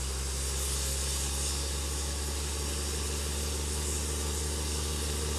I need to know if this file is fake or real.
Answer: real